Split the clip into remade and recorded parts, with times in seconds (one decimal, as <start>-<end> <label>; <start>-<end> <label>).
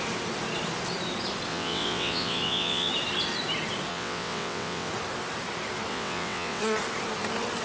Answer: 0.0-1.5 recorded; 1.5-2.9 remade; 2.9-3.9 recorded; 3.9-4.9 remade; 4.9-5.9 recorded; 5.9-6.6 remade; 6.6-7.6 recorded